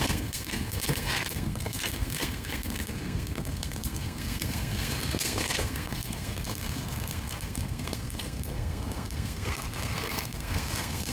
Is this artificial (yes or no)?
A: yes